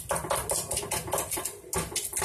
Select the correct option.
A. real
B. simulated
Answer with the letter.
A